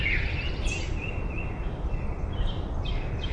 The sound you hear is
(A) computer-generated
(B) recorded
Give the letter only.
B